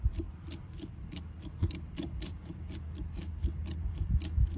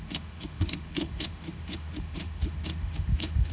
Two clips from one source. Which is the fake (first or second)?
second